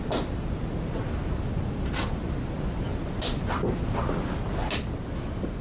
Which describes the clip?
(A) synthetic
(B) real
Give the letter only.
B